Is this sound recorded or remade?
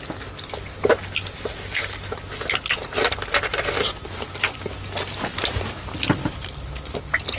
recorded